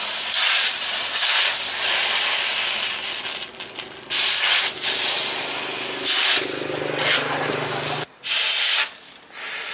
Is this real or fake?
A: real